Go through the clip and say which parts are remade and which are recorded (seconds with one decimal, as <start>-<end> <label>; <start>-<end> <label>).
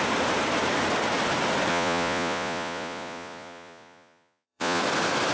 0.0-1.7 recorded; 1.7-4.8 remade; 4.8-5.3 recorded